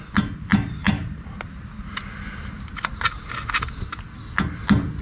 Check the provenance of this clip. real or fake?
real